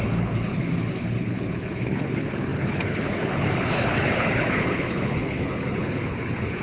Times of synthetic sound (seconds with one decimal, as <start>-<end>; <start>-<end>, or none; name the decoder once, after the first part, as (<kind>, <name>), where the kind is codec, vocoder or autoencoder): 0.0-6.6 (codec, HILCodec)